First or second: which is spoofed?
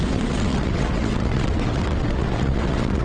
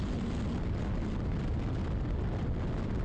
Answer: first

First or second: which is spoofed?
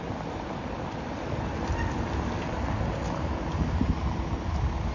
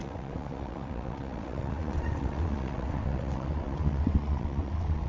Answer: second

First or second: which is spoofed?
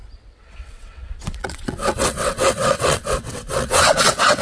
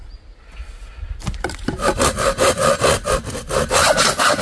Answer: first